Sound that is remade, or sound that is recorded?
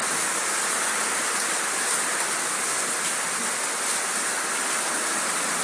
recorded